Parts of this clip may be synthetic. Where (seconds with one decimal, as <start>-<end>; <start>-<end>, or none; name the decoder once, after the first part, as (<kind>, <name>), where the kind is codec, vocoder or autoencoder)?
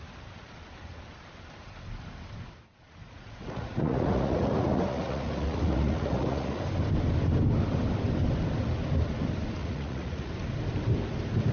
3.0-6.6 (vocoder, Vocos); 9.6-10.3